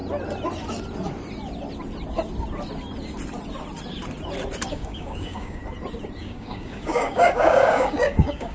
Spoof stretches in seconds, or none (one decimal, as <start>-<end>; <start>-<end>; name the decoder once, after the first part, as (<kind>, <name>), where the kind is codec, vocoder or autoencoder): 4.7-5.6 (codec, DAC); 6.2-8.5